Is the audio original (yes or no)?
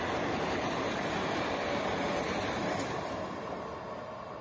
yes